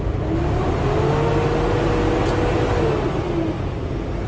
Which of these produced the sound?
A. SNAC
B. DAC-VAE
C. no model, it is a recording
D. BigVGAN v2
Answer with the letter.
C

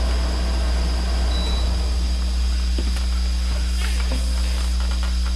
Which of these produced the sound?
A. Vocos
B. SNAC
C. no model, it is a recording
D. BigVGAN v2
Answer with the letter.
C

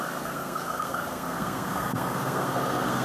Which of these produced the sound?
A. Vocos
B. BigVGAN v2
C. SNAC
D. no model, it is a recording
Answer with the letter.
C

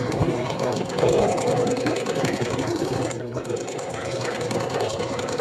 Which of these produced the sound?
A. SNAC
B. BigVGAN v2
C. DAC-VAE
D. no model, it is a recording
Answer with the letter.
A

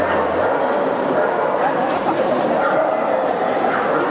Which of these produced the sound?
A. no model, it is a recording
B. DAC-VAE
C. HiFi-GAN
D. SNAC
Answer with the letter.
A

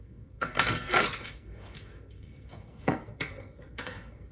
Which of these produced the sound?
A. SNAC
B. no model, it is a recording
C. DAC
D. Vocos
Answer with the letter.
A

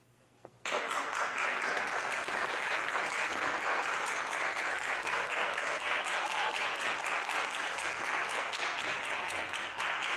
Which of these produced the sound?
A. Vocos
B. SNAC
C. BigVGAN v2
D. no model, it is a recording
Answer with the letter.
B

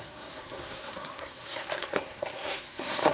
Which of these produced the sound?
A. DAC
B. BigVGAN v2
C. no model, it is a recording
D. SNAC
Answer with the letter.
D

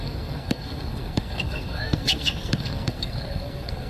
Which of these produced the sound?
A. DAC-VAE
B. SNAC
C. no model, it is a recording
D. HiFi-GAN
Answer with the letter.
B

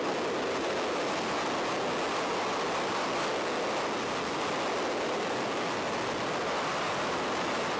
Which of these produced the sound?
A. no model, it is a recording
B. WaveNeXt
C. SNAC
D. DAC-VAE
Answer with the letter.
A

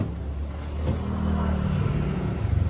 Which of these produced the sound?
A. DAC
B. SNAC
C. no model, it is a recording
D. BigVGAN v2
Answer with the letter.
C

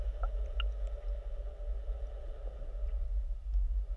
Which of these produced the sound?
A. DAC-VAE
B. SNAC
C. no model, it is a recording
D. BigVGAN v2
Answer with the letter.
C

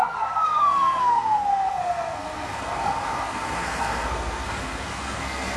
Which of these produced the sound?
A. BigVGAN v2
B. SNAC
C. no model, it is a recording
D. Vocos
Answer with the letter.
B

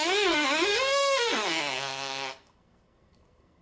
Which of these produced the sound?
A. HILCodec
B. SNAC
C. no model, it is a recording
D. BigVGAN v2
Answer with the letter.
B